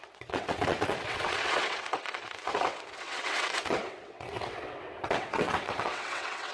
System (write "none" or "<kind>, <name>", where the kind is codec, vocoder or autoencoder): vocoder, WaveNeXt